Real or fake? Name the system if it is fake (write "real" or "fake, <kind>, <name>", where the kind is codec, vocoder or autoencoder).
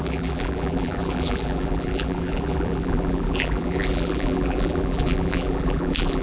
fake, vocoder, BigVGAN v2